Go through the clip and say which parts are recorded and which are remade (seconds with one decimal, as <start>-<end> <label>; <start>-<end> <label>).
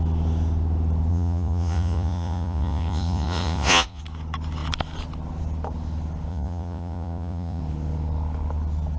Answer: 0.0-1.1 recorded; 1.1-4.0 remade; 4.0-6.3 recorded; 6.3-7.6 remade; 7.6-9.0 recorded